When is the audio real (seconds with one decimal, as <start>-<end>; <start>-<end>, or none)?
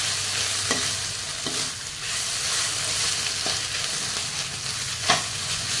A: 0.0-4.8